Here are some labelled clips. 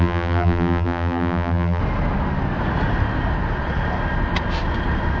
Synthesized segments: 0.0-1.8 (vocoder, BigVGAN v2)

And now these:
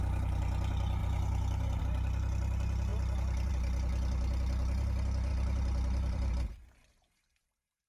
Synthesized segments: 1.0-1.8 (vocoder, BigVGAN v2); 5.3-6.3

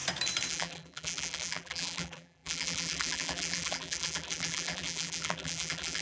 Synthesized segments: 0.5-6.0 (vocoder, BigVGAN v2)

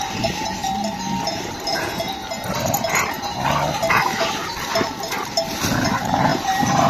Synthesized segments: 6.3-6.9 (vocoder, BigVGAN v2)

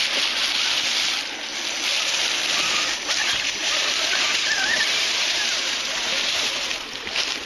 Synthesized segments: 3.2-6.6 (vocoder, BigVGAN v2)

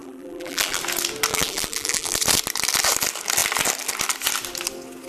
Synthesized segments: 0.0-0.8 (vocoder, BigVGAN v2); 1.3-2.1

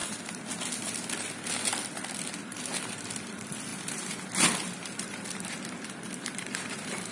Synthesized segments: 1.9-3.7 (vocoder, BigVGAN v2); 5.0-7.1